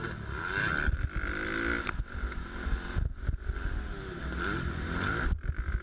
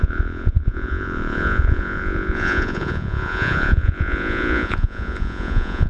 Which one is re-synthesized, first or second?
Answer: second